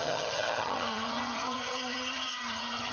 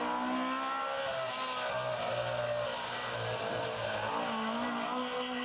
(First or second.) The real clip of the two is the second